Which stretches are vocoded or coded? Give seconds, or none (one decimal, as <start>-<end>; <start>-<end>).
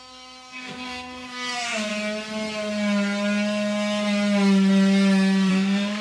0.0-1.9; 5.5-6.0